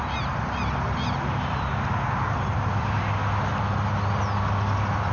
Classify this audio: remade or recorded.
recorded